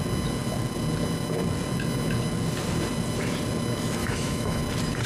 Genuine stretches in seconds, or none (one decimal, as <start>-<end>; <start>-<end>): 0.0-4.0; 4.6-5.1